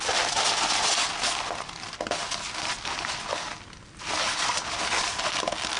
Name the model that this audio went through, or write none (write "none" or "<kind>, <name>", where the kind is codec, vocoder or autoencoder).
none